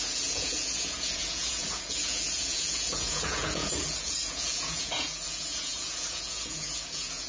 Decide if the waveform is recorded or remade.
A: remade